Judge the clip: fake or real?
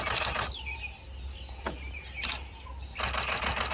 real